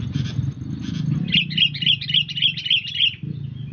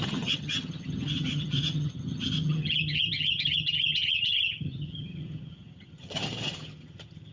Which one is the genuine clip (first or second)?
first